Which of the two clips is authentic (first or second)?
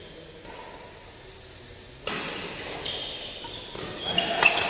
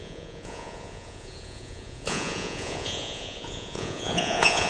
first